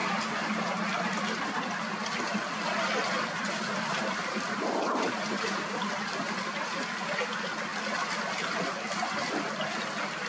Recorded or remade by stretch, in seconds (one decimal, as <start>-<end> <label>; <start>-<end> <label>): 0.0-10.3 recorded